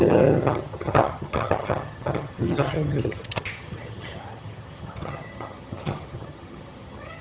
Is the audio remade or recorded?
remade